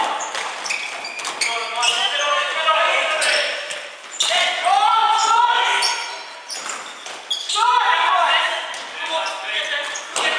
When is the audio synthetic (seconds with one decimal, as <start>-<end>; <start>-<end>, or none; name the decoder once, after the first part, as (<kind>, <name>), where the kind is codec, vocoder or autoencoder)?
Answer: none